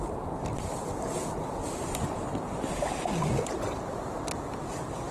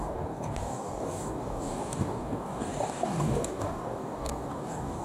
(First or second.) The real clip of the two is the first